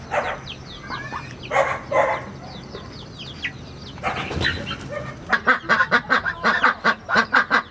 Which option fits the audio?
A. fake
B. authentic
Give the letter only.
B